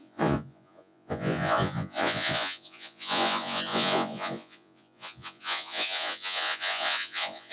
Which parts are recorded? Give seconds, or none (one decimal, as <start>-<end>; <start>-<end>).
none